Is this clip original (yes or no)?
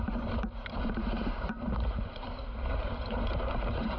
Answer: no